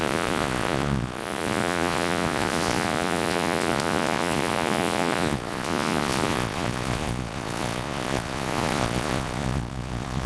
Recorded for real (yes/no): no